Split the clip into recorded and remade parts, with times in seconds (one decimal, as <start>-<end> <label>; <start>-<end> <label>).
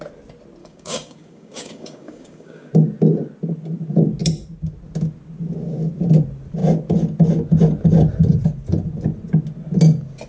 0.0-0.6 recorded; 0.6-2.7 remade; 2.7-10.3 recorded